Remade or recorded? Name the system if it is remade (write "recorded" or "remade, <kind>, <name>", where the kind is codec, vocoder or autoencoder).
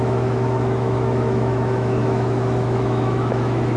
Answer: remade, autoencoder, DAC-VAE